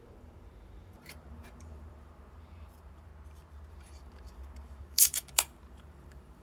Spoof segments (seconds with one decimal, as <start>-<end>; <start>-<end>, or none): 0.0-3.1; 3.7-6.4